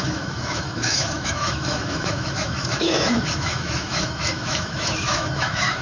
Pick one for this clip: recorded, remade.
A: remade